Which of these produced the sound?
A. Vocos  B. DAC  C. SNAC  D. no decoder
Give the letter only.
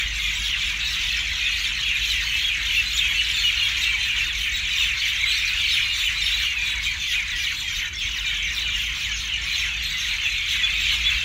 D